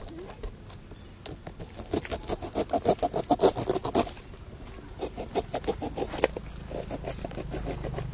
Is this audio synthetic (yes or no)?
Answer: no